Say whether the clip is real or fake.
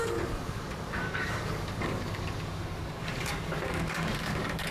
fake